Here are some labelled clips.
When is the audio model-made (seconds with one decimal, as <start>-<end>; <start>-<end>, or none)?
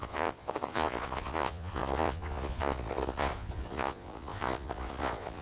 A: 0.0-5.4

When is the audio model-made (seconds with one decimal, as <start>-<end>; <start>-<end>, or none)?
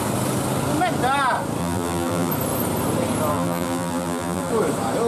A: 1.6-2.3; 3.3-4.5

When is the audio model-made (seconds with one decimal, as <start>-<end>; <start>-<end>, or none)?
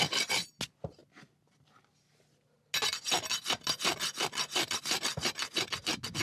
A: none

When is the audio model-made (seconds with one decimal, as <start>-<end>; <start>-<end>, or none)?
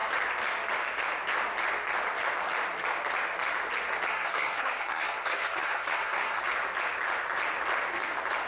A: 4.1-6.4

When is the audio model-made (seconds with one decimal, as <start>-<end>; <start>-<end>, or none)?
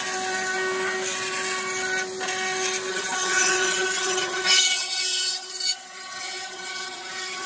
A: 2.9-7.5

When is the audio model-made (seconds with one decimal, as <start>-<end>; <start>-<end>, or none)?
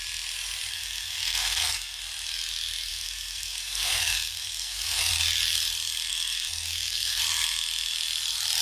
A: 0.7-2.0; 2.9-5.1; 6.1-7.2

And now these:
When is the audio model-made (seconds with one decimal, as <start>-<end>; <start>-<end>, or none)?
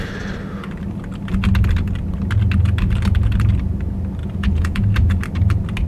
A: 4.2-5.2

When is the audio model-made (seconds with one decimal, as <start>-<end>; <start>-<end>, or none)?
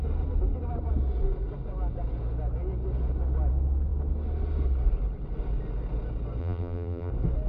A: 6.4-7.1